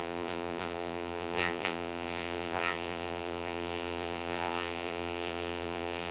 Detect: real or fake fake